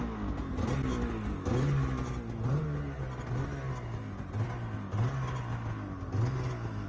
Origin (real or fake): real